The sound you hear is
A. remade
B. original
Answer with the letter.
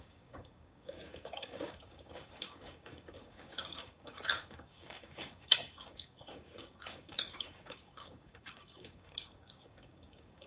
A